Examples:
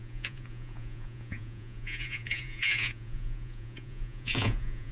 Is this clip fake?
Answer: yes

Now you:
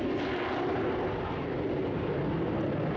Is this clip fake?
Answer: no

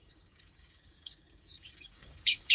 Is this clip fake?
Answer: yes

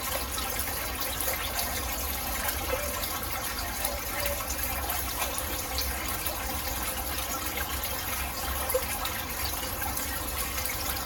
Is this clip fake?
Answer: no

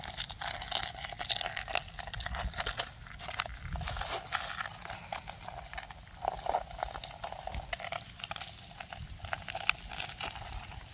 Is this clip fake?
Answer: no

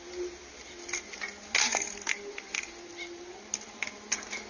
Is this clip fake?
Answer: no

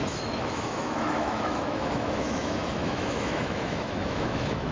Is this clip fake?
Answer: yes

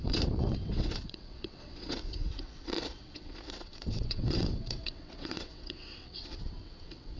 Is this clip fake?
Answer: yes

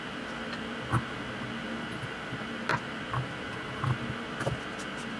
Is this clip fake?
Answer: no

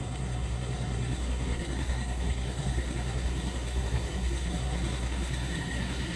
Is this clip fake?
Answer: yes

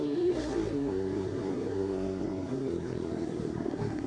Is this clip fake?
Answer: yes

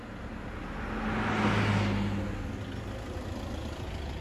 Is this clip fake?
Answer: no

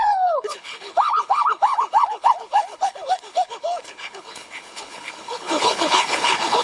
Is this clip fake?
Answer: yes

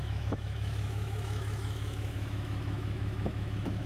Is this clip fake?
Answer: yes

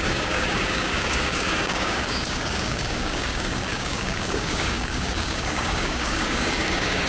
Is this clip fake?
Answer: yes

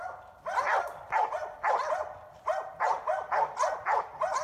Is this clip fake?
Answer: no